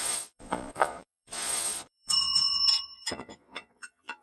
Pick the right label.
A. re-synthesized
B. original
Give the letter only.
A